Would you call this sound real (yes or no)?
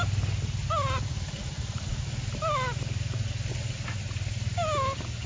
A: yes